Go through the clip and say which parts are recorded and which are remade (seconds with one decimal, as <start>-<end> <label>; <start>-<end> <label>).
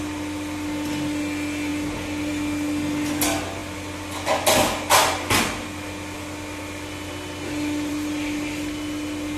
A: 0.0-9.4 recorded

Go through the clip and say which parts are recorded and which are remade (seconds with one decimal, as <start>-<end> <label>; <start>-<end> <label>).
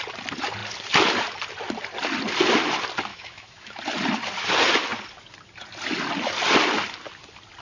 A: 0.0-3.1 recorded; 3.1-3.8 remade; 3.8-7.6 recorded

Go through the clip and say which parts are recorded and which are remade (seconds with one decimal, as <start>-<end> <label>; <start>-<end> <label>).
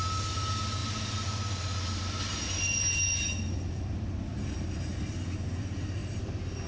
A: 0.0-6.7 recorded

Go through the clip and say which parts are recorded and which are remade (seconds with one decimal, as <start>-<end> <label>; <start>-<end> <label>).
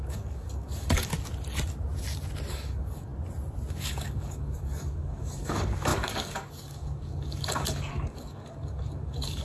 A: 0.0-1.1 remade; 1.1-2.5 recorded; 2.5-3.1 remade; 3.1-3.7 recorded; 3.7-9.4 remade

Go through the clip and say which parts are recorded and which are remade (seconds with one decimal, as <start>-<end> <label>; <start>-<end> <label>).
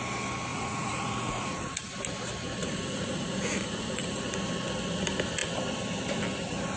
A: 0.0-0.5 recorded; 0.5-1.9 remade; 1.9-2.6 recorded; 2.6-4.2 remade; 4.2-6.8 recorded